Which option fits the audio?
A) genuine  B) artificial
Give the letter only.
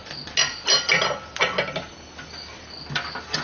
A